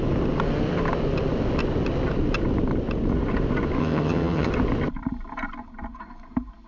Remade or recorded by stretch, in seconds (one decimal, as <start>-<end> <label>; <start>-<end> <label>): 0.0-3.8 recorded; 3.8-4.5 remade; 4.5-6.7 recorded